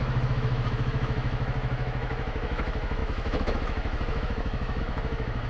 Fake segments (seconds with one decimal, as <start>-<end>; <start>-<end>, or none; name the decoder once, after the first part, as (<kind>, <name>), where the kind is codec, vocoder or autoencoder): 0.0-5.5 (autoencoder, DAC-VAE)